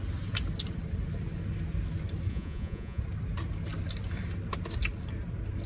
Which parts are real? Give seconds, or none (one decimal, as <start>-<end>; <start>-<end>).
0.0-2.3; 3.0-5.7